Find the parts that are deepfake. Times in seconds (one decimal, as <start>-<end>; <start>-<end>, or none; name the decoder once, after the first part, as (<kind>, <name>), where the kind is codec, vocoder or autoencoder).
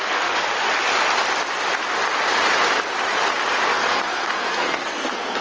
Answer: 0.0-0.5 (codec, SNAC); 3.7-5.4